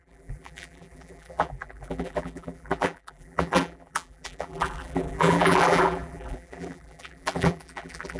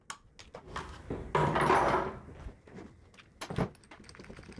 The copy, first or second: first